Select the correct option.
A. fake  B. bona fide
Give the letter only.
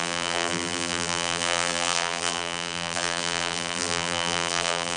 A